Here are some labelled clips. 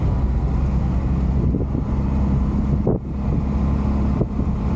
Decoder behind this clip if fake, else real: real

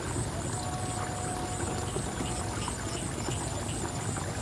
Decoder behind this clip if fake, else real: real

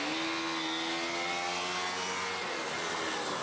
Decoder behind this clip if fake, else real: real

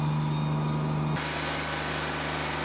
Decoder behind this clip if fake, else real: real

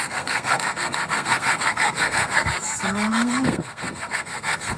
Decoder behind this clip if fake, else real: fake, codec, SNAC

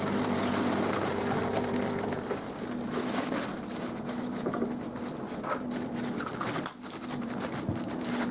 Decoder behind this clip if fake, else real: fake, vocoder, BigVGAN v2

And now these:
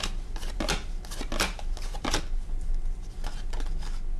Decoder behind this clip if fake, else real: real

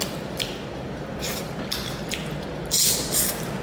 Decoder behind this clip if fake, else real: real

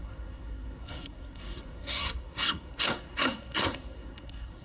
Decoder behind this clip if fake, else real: fake, codec, SNAC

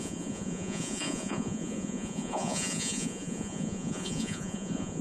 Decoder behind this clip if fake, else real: fake, vocoder, Vocos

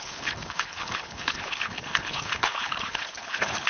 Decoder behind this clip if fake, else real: fake, codec, HILCodec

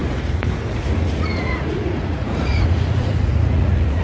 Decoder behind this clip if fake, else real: fake, vocoder, Vocos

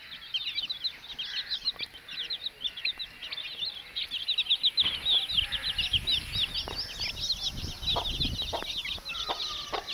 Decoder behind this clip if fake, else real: real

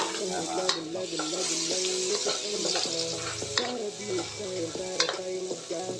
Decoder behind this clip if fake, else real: real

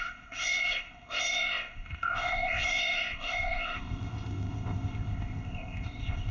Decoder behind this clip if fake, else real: fake, codec, ZipCodec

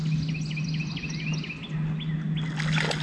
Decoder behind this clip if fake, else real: real